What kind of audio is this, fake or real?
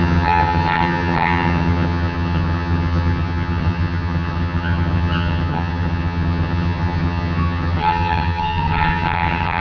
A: fake